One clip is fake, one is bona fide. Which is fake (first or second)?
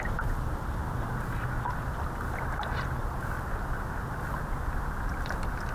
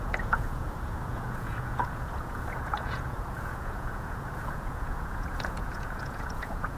second